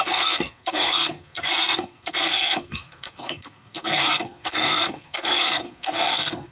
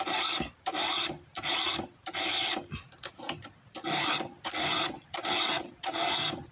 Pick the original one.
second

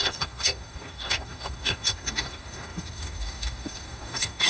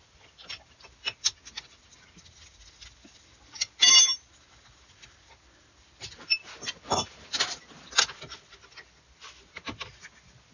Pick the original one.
second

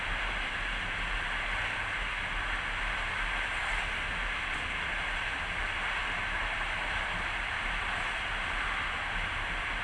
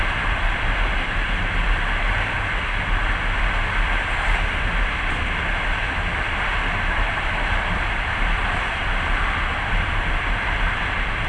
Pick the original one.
first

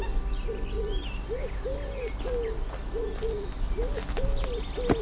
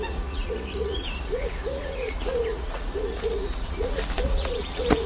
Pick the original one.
first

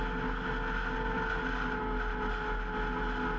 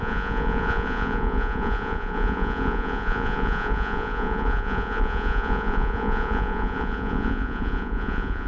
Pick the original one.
first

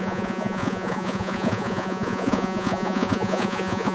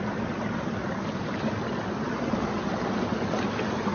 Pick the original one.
second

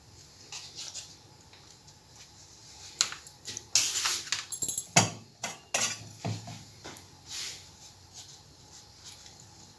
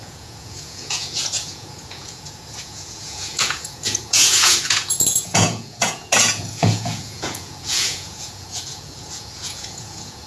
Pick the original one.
first